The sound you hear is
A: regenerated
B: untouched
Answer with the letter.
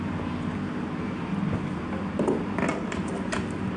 B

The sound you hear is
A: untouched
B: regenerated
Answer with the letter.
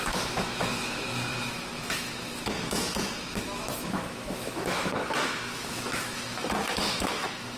B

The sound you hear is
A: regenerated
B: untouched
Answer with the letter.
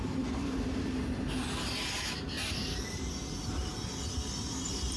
B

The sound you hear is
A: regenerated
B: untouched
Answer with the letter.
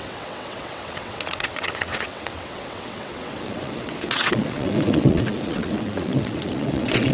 A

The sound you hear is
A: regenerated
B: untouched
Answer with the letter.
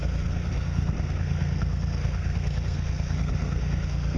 A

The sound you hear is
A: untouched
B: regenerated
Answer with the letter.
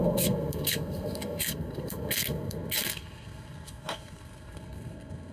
B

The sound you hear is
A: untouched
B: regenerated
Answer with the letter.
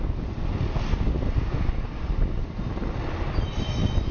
A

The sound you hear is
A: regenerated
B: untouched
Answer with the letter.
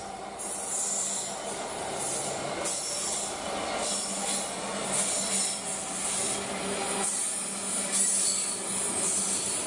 B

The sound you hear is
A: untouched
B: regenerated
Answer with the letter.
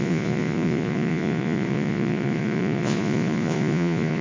B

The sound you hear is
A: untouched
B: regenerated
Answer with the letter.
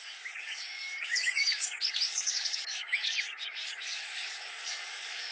B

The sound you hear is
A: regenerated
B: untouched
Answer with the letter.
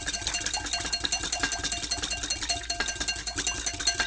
B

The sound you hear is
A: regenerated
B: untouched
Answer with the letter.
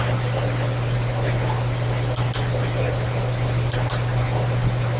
B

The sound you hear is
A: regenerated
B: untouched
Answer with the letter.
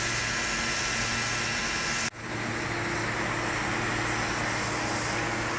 B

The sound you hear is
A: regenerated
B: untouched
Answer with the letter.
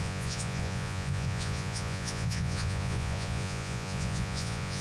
A